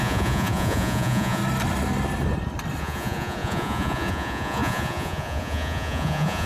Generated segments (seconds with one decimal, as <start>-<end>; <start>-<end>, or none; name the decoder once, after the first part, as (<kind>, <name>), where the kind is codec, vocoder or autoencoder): 0.0-1.4 (vocoder, Vocos); 2.8-6.5